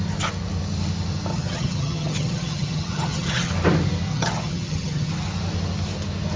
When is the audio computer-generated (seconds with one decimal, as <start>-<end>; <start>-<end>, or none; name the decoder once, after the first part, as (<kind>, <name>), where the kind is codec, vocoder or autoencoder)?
1.3-3.5 (vocoder, HiFi-GAN); 4.1-5.1

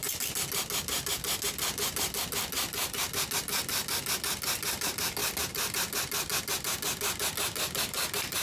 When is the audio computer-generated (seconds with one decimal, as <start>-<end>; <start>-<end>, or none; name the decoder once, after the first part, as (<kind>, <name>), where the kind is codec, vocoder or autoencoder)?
none

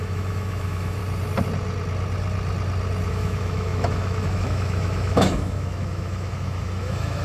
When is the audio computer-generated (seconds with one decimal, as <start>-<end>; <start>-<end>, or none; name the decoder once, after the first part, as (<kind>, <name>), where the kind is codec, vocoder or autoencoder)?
0.0-1.0 (autoencoder, DAC-VAE); 3.1-7.2

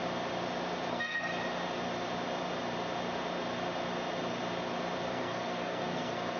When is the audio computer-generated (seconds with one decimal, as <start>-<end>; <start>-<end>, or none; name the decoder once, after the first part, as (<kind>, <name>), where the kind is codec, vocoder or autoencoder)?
0.9-1.3 (codec, SNAC); 5.1-6.4

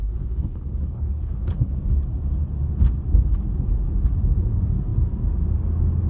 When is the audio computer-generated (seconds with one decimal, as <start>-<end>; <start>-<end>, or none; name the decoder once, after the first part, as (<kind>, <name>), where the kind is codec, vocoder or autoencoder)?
0.0-1.8 (codec, HILCodec)

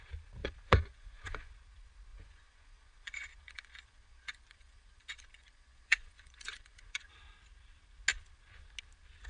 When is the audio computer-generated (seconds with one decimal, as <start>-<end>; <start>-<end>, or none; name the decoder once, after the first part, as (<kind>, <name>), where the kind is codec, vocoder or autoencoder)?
0.4-1.5 (vocoder, Vocos); 2.1-7.1

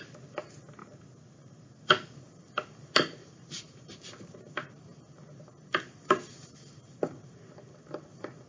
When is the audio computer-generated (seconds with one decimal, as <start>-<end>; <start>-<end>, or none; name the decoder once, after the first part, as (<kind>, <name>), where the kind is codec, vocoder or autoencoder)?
3.2-4.0 (vocoder, BigVGAN v2)